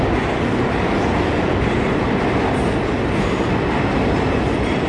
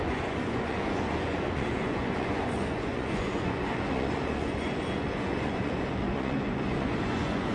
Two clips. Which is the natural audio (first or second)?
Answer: first